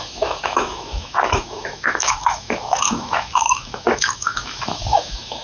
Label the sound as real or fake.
fake